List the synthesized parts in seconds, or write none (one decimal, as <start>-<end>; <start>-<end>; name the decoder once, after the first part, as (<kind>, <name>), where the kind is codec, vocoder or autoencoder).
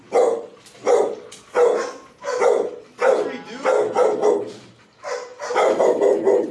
0.8-4.7 (vocoder, BigVGAN v2); 5.3-6.0